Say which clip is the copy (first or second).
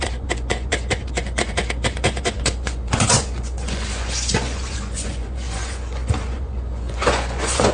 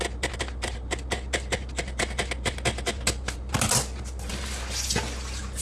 first